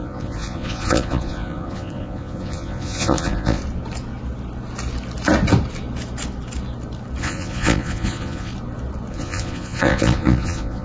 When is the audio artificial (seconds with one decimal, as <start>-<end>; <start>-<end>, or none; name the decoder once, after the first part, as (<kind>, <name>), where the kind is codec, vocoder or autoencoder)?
0.0-3.6 (vocoder, Vocos); 7.2-8.5; 9.1-10.8